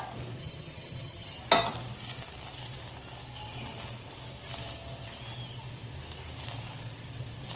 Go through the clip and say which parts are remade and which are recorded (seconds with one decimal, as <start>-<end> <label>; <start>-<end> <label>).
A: 0.0-0.4 recorded; 0.4-1.4 remade; 1.4-7.5 recorded